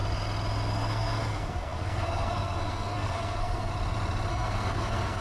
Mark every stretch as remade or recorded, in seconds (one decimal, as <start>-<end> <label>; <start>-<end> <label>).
0.0-0.7 recorded; 0.7-3.7 remade; 3.7-4.3 recorded; 4.3-5.2 remade